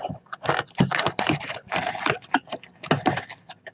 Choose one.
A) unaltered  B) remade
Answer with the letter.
A